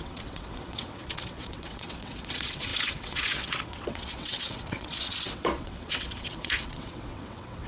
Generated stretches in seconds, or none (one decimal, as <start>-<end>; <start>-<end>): 0.0-7.7